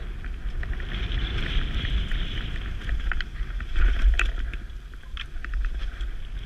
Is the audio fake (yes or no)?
no